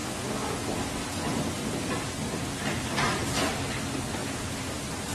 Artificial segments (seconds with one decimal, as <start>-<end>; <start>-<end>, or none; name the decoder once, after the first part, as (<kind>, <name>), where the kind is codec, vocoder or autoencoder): 1.6-2.9 (vocoder, BigVGAN v2); 4.2-5.1